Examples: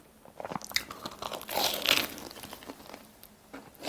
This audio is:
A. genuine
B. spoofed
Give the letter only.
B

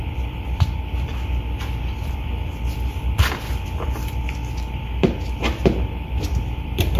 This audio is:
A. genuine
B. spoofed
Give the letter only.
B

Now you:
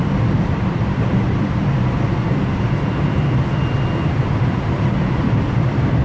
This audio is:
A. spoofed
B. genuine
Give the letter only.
A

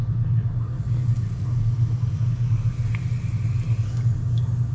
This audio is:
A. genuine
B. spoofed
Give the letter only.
A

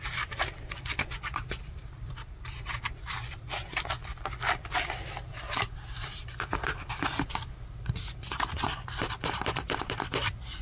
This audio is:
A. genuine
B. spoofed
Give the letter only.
B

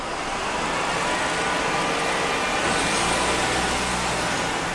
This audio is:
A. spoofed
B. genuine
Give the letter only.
B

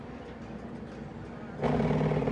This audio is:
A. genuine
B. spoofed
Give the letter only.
A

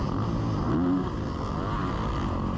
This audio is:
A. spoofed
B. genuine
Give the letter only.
B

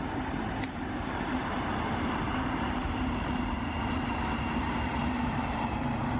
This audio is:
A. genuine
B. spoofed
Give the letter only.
B